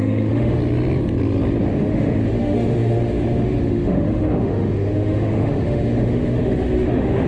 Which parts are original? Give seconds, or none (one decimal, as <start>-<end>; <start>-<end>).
0.6-1.7